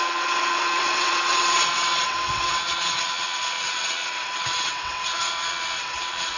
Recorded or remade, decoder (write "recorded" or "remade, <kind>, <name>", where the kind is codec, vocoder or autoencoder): remade, vocoder, WaveNeXt